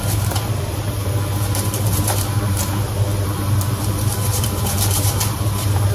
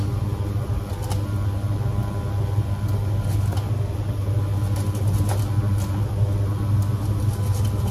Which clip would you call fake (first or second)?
first